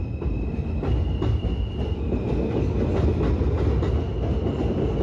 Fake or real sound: real